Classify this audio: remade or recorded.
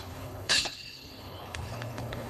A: remade